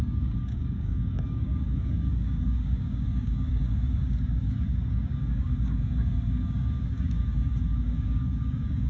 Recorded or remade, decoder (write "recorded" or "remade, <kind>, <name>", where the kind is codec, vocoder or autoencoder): remade, codec, DAC